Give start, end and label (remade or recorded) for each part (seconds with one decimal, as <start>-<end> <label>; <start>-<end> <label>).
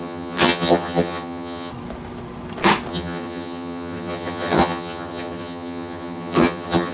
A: 0.0-1.7 remade; 1.7-2.9 recorded; 2.9-6.9 remade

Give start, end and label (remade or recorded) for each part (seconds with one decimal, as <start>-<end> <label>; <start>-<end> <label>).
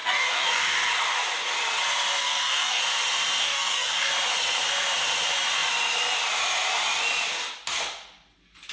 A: 0.0-0.6 remade; 0.6-2.2 recorded; 2.2-2.8 remade; 2.8-3.4 recorded; 3.4-4.1 remade; 4.1-8.7 recorded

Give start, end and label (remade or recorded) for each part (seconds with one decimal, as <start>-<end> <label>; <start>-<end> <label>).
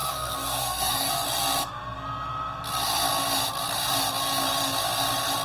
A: 0.0-1.1 remade; 1.1-5.4 recorded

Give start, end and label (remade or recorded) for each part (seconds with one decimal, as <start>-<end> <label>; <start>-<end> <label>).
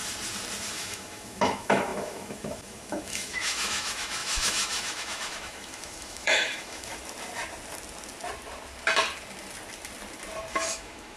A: 0.0-0.7 recorded; 0.7-6.9 remade; 6.9-10.5 recorded; 10.5-11.2 remade